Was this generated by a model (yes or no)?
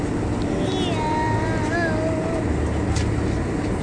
no